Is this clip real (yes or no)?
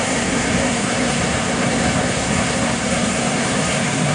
no